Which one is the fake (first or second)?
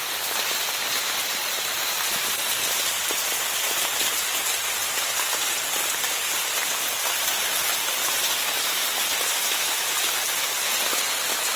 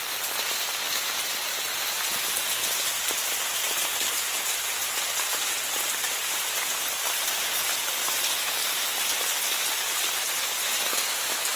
first